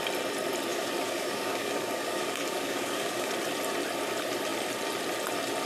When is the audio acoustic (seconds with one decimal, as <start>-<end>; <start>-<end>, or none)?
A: 0.0-0.7; 3.3-5.7